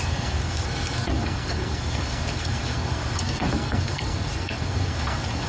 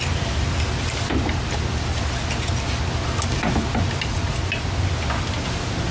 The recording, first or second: second